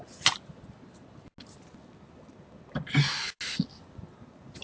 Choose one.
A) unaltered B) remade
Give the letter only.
A